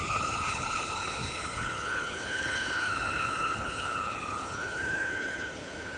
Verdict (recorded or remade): remade